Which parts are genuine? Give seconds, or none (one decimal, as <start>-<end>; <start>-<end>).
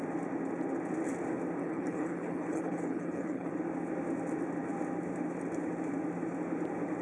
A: 0.0-1.6; 3.5-7.0